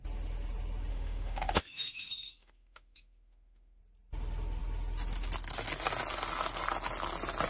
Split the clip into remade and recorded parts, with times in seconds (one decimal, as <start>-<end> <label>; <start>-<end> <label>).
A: 0.0-0.9 recorded; 0.9-3.8 remade; 3.8-7.5 recorded